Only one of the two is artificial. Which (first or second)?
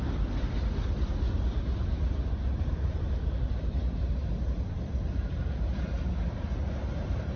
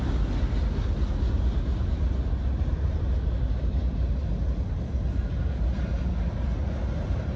first